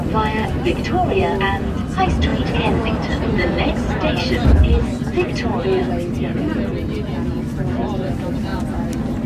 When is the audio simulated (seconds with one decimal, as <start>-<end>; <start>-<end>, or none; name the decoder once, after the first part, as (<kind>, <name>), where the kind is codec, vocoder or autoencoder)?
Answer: 0.0-9.3 (vocoder, BigVGAN v2)